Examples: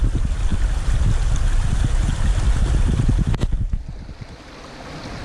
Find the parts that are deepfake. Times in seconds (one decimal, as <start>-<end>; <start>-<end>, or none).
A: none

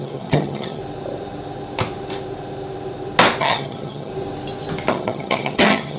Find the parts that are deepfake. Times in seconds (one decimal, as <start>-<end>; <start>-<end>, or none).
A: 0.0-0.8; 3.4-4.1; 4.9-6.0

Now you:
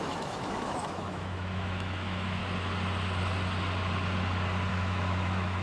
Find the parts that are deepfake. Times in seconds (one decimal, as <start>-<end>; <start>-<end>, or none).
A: 0.0-2.4; 4.7-5.6